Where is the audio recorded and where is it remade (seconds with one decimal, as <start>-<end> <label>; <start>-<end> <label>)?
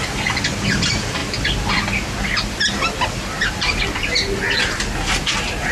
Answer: 0.0-5.7 recorded